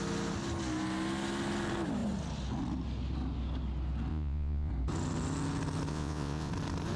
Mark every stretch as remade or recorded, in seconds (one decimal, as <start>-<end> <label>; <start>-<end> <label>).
0.0-4.1 recorded; 4.1-4.7 remade; 4.7-5.9 recorded; 5.9-6.5 remade; 6.5-7.0 recorded